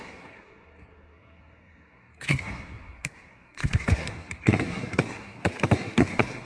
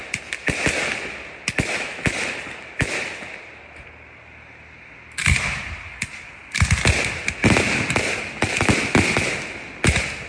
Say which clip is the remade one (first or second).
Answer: first